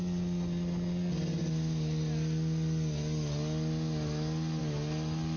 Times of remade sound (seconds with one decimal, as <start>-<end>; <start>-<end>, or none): none